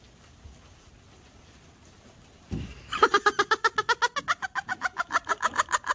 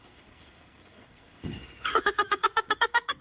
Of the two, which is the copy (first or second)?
second